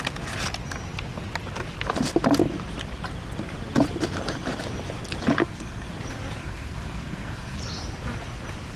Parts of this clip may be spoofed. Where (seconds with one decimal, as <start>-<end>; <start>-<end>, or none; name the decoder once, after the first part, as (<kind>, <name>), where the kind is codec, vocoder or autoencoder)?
5.4-5.9 (codec, SNAC); 6.4-7.6